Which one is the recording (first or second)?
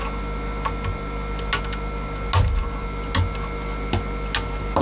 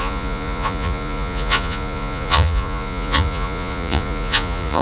first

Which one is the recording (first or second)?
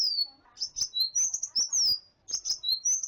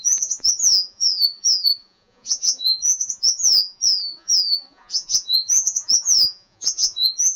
first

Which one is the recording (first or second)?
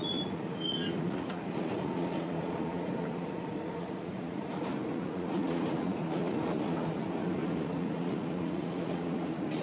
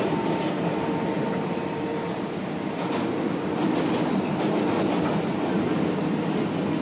second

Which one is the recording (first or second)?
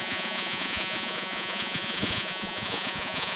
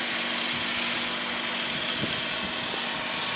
second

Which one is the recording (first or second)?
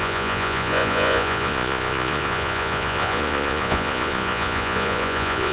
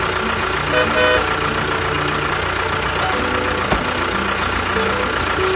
second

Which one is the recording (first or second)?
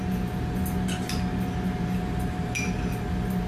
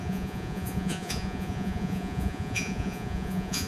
first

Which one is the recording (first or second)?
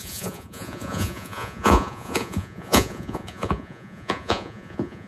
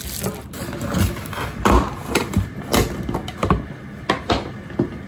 second